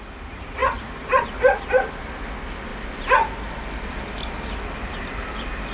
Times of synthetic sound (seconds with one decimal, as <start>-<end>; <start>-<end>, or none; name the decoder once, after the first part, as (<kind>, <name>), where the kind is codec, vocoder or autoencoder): none